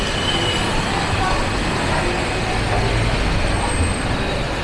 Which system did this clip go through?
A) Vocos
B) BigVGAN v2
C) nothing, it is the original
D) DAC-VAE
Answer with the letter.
C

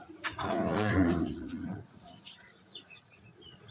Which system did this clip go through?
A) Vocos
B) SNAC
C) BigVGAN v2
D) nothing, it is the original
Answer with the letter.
A